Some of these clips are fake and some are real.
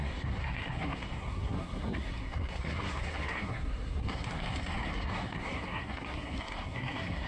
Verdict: fake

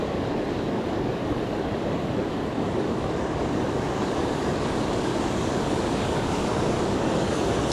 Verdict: fake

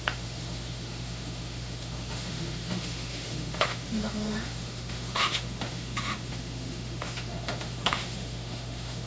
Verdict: fake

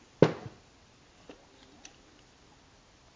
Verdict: real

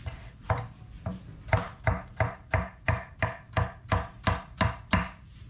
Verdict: real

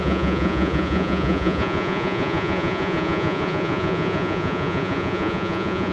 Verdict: fake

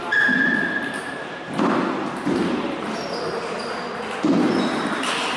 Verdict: fake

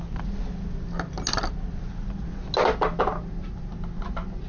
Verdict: real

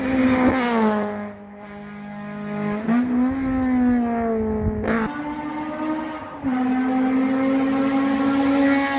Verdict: real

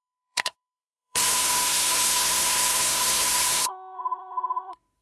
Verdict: fake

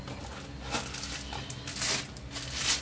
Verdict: real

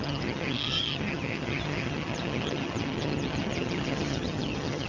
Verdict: fake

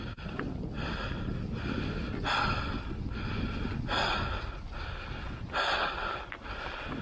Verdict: real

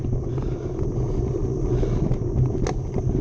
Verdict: real